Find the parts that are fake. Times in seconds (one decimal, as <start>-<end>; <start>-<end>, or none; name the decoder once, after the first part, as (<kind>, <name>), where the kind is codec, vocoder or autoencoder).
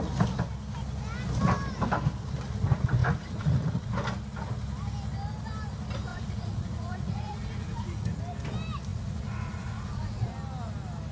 3.0-3.9 (vocoder, Vocos); 6.1-8.2; 8.9-10.3